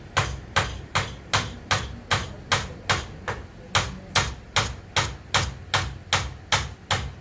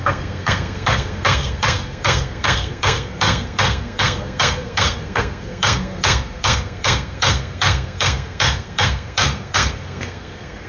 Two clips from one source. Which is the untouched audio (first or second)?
first